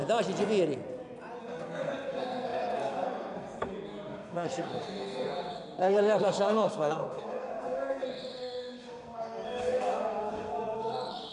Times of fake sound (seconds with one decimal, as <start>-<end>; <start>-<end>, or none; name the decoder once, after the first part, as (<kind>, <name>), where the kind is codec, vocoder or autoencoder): 1.4-11.3 (codec, SNAC)